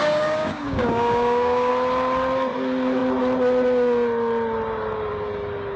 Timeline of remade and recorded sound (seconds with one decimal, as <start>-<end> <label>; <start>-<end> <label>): 0.0-1.7 remade; 1.7-5.8 recorded